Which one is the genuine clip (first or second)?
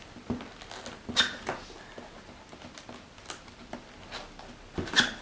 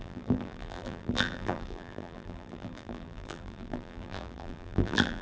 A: first